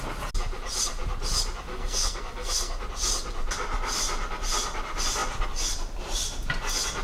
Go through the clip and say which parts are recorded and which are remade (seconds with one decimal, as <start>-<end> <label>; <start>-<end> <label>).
0.0-1.7 recorded; 1.7-2.8 remade; 2.8-7.0 recorded